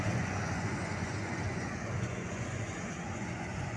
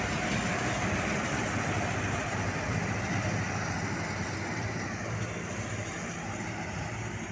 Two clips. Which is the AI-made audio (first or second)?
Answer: first